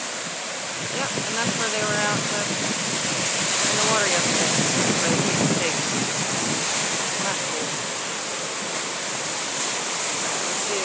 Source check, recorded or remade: recorded